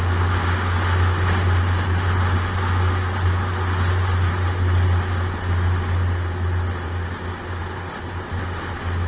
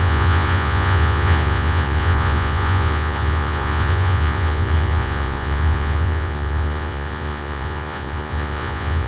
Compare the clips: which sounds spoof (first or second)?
second